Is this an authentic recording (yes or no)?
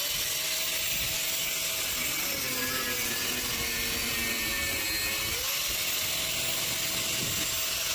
yes